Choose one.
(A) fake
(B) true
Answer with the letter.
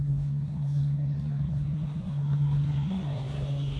A